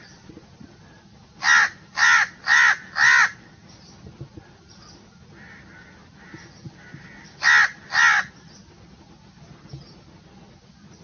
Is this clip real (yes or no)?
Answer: yes